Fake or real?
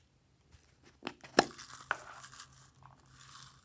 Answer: real